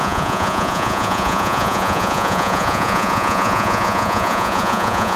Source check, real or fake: fake